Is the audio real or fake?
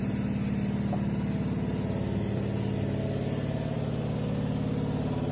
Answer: real